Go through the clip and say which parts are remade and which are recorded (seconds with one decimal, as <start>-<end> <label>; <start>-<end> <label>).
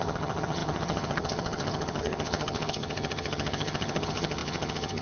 0.0-5.0 remade